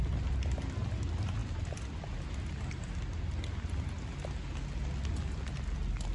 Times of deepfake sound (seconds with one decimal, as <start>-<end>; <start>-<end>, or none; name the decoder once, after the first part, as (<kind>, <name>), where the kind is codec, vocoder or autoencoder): none